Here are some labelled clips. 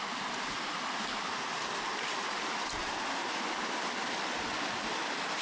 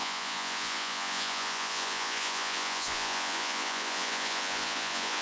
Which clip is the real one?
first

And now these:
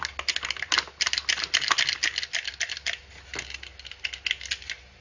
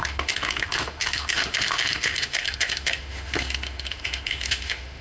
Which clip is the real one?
first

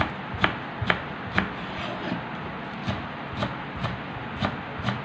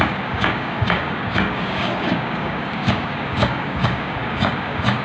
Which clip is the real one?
first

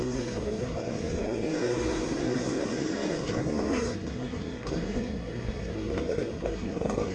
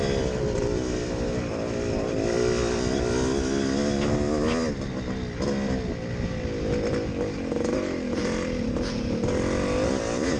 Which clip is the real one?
second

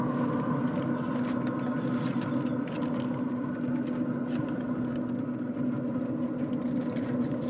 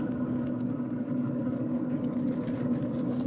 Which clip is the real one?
first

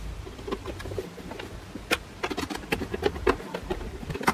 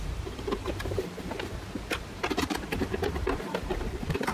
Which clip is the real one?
first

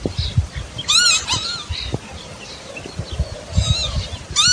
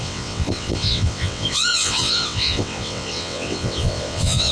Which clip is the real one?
first